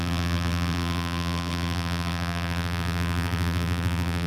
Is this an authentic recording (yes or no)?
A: no